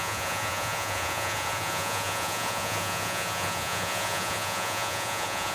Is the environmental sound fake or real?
fake